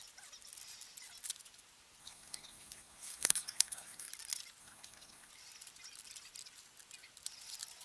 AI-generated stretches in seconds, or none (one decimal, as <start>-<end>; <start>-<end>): 2.0-4.1; 4.6-5.3